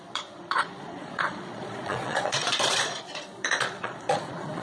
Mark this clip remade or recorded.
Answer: remade